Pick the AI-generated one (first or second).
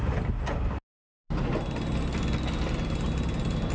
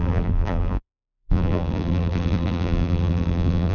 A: second